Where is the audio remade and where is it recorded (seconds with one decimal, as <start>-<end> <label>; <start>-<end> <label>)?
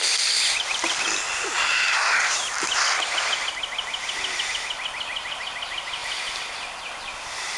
0.0-7.6 recorded